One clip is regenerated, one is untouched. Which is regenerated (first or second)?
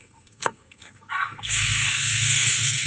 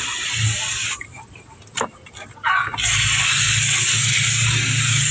first